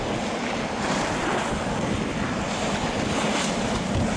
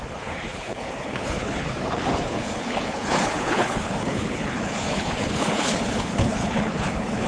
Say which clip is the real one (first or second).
first